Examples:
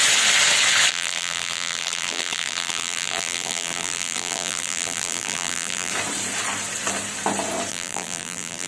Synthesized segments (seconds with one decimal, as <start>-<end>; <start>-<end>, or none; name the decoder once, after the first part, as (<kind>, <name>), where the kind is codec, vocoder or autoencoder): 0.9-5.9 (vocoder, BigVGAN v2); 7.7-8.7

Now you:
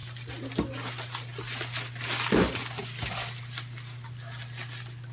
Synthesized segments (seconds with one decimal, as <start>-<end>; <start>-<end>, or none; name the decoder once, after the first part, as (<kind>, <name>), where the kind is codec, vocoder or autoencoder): none

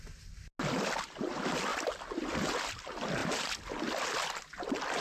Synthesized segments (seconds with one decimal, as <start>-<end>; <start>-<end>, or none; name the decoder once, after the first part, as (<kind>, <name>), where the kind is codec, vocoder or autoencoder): none

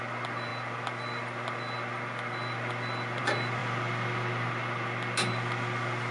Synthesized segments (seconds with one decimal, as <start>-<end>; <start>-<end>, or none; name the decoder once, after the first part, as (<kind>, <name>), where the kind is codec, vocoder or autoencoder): none

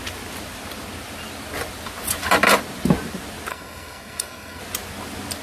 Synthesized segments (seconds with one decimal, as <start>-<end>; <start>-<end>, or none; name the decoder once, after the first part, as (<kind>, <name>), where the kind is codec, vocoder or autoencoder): 3.5-4.6 (codec, SNAC)

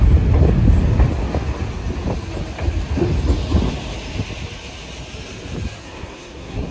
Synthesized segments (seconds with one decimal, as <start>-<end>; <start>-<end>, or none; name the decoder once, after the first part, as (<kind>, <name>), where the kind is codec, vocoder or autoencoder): 5.8-6.7 (codec, SNAC)